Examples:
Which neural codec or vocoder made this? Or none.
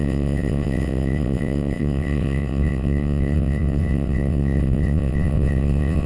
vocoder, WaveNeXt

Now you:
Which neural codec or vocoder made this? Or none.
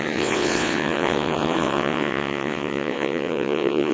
vocoder, WaveNeXt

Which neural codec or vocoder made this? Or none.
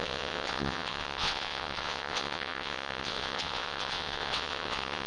vocoder, WaveNeXt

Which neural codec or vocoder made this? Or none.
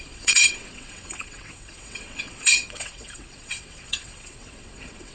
vocoder, WaveNeXt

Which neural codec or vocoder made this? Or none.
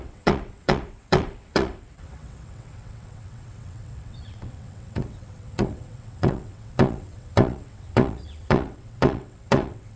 vocoder, WaveNeXt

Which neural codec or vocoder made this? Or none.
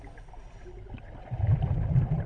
none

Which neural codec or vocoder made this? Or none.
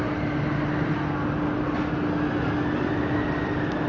none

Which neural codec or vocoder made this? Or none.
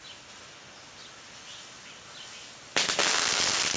none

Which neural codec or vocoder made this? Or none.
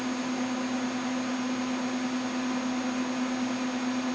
none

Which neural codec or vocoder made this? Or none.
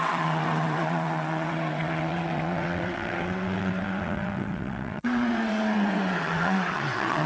vocoder, WaveNeXt